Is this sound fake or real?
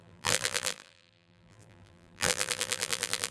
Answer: fake